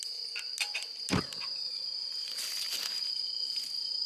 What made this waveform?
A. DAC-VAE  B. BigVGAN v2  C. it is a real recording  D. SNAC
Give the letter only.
C